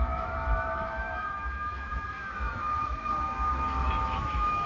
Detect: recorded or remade remade